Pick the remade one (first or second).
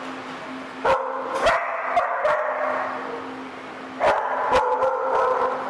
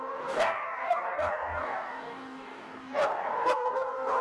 second